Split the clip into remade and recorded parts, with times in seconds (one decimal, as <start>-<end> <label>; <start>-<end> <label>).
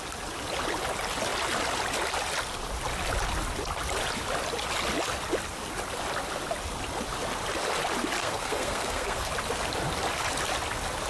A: 0.0-8.2 recorded; 8.2-9.3 remade; 9.3-11.1 recorded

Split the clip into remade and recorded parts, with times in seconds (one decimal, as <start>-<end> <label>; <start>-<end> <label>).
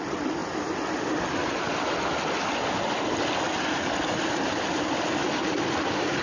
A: 0.0-6.2 recorded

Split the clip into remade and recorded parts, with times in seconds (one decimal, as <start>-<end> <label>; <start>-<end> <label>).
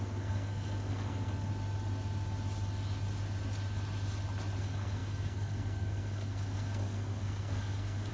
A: 0.0-1.5 remade; 1.5-4.6 recorded; 4.6-8.1 remade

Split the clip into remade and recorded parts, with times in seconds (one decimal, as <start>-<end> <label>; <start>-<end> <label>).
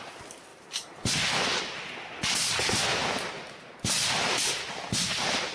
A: 0.0-5.5 recorded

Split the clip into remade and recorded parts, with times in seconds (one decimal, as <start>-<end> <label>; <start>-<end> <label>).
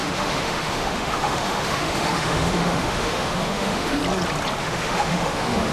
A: 0.0-4.0 remade; 4.0-4.6 recorded; 4.6-5.7 remade